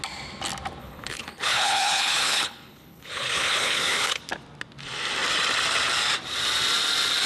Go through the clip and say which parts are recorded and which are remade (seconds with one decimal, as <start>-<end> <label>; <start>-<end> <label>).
0.0-0.8 recorded; 0.8-4.2 remade; 4.2-7.3 recorded